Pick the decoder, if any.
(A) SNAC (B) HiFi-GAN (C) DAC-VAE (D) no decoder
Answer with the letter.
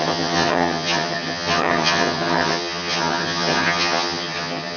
B